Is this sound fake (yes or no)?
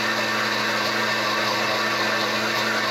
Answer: no